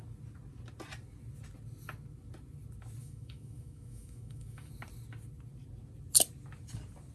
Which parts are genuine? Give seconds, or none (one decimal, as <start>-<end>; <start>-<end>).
0.0-3.0; 4.7-7.1

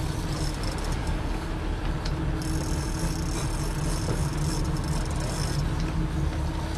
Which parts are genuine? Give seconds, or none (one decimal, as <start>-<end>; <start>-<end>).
0.0-1.0; 1.5-6.8